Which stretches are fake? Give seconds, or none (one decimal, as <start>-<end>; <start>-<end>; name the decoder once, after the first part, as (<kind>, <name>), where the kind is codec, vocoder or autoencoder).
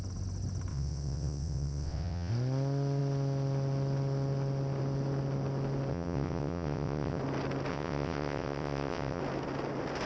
0.7-2.3 (vocoder, WaveNeXt); 5.9-7.2; 7.7-9.2